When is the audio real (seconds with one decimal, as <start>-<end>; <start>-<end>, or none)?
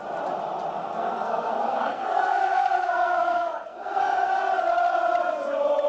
0.0-0.8; 4.3-5.9